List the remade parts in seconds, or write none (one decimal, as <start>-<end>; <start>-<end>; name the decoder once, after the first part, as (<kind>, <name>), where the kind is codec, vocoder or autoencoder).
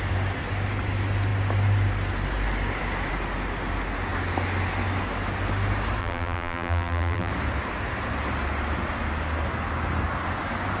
6.0-7.3 (vocoder, BigVGAN v2)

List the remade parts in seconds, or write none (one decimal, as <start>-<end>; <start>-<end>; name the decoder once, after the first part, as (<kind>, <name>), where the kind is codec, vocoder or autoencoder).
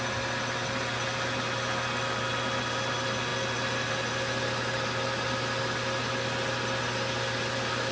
none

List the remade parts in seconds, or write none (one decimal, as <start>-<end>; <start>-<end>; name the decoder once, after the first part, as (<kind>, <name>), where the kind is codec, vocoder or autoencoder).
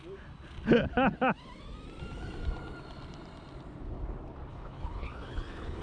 4.5-5.8 (codec, HILCodec)